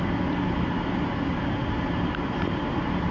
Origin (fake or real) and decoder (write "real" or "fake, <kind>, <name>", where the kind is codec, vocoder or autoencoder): real